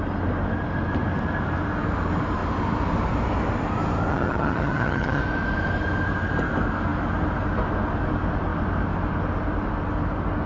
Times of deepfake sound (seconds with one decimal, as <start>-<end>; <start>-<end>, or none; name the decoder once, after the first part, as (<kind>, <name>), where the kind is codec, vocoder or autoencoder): 4.1-5.2 (vocoder, HiFi-GAN)